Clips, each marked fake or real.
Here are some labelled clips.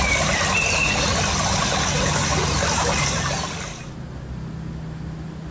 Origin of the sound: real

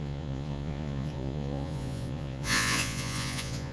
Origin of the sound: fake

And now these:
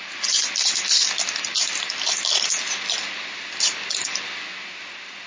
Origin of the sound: real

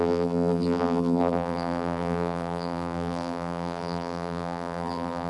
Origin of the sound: fake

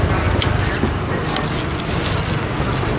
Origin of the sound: real